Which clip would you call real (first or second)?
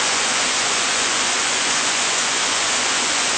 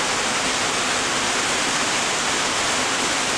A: second